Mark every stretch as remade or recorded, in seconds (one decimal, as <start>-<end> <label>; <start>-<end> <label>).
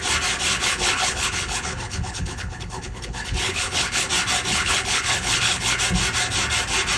0.0-0.5 recorded; 0.5-4.1 remade; 4.1-4.5 recorded; 4.5-5.8 remade; 5.8-7.0 recorded